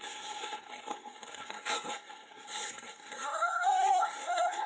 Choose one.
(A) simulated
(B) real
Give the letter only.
A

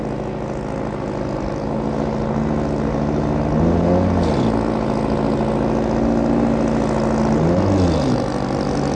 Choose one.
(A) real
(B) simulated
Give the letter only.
A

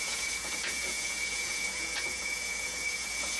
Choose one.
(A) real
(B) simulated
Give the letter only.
B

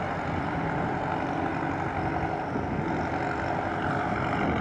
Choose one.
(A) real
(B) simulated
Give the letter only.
A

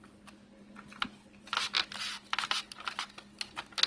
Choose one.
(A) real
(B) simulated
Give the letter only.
A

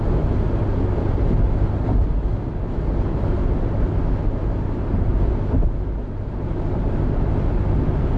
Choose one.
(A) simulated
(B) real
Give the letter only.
B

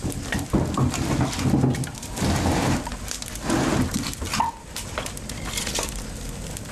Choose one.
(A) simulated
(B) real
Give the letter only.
B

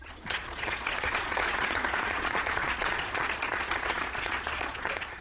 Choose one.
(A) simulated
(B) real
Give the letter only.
A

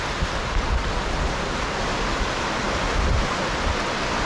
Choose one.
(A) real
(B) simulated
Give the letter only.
A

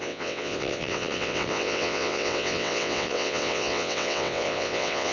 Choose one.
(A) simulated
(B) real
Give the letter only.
A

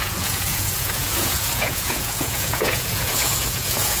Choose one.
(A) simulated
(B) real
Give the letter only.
A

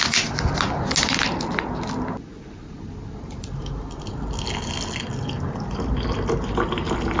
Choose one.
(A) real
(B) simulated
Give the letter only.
A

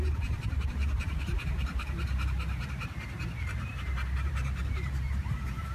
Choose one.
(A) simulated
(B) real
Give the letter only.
A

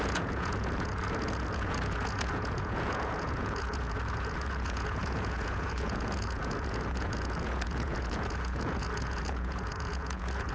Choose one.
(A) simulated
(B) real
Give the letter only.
A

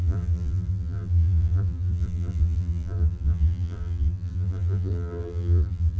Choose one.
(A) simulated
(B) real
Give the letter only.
A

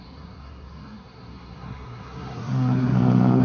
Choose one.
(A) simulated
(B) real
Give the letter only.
A